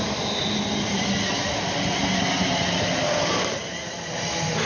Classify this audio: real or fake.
real